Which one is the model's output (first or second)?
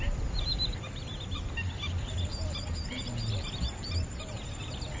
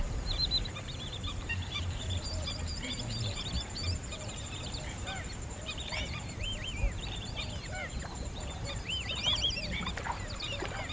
second